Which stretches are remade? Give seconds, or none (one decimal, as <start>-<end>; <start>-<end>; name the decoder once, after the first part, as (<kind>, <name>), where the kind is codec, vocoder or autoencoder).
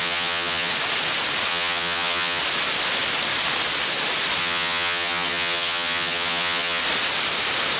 0.0-0.7 (vocoder, HiFi-GAN); 1.5-2.4; 4.4-6.8